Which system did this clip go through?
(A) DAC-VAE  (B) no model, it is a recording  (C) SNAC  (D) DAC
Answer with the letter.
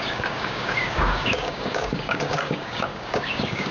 D